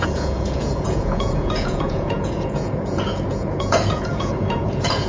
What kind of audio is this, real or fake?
fake